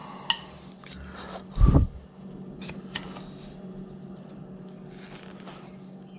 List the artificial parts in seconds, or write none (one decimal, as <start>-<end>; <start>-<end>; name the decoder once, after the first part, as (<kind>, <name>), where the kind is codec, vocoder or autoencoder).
none